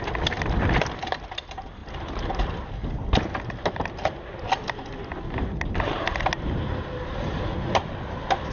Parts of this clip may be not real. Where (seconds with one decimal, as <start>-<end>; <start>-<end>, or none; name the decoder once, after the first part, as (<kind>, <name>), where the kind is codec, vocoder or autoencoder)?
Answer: none